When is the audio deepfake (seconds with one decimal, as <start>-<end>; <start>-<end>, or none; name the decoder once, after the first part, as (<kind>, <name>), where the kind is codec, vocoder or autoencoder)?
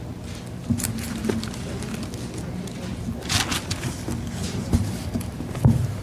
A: 0.6-1.3 (vocoder, BigVGAN v2); 4.4-5.5